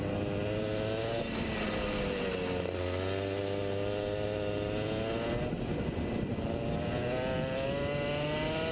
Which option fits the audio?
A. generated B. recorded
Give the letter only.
B